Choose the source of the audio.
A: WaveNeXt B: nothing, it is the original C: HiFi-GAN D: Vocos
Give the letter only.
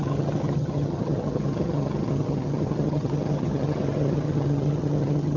C